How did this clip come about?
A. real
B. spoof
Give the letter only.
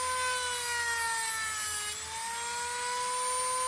A